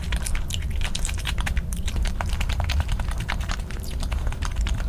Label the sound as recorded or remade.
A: remade